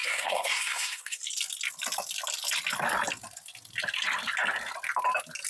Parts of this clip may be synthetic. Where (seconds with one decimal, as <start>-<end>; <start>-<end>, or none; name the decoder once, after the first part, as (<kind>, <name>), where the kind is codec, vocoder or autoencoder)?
0.0-1.2 (codec, SNAC)